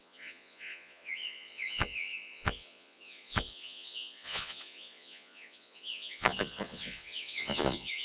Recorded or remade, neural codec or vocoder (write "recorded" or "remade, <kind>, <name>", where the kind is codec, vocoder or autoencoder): remade, vocoder, Vocos